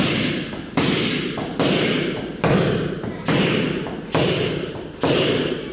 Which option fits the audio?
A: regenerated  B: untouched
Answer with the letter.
B